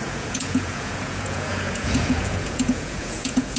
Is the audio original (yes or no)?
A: no